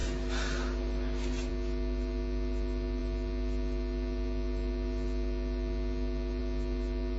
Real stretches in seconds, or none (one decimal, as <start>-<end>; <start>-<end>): 0.0-7.2